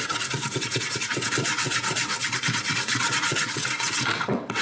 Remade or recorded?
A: remade